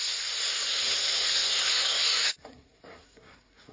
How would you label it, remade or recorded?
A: remade